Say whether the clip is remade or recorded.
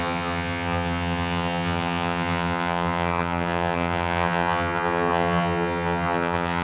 remade